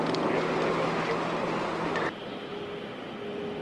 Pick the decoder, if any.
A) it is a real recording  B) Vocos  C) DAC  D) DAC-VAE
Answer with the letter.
A